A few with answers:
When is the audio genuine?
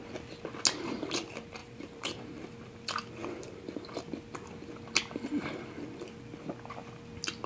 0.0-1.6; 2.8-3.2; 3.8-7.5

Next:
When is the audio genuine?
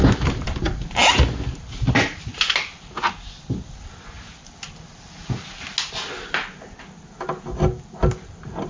0.0-8.7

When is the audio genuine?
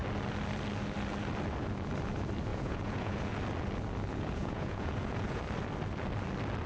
0.0-2.5; 3.3-4.1; 5.4-6.7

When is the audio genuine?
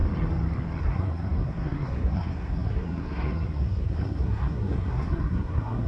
0.0-0.8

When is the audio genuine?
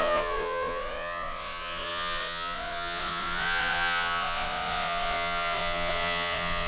none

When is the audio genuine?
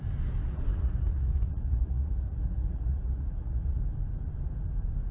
0.0-0.7; 3.8-5.1